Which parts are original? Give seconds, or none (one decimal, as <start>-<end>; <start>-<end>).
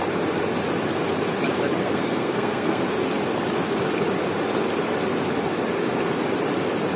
0.0-1.8; 2.8-7.0